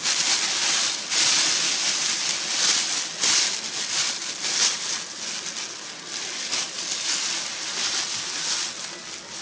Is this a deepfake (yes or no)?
no